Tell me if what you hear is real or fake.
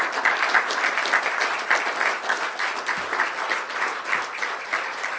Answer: real